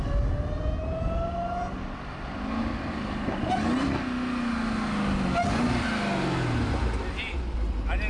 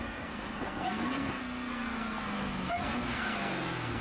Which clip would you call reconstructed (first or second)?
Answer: second